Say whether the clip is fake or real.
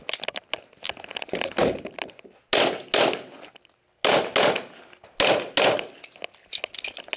real